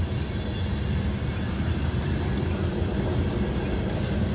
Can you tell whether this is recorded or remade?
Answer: recorded